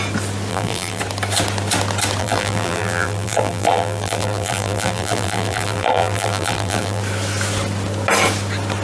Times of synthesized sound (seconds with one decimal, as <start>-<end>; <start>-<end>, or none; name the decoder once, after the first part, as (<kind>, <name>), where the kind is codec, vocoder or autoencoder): 0.5-1.0 (vocoder, BigVGAN v2); 2.2-7.0